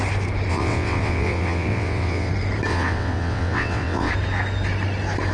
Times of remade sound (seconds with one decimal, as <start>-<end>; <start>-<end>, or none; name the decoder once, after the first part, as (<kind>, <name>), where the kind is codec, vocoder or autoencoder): 0.5-2.3 (vocoder, WaveNeXt); 2.7-4.1